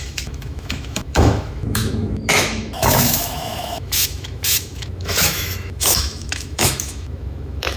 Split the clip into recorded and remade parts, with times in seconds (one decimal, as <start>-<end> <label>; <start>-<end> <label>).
0.0-7.8 remade